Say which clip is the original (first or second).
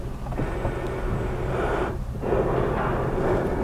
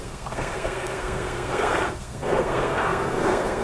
first